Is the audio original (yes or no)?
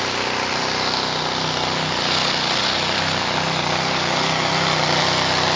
yes